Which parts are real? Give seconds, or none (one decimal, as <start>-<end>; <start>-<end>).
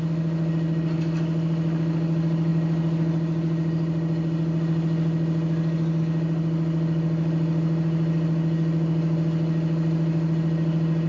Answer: 0.0-11.1